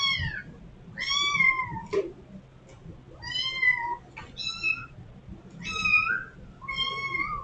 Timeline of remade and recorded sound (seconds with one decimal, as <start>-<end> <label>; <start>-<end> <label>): 0.0-7.4 recorded